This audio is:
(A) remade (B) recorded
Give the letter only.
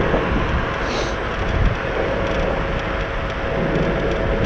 B